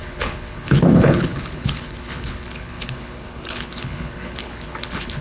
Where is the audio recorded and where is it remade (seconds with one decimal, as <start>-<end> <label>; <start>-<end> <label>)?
0.0-5.2 remade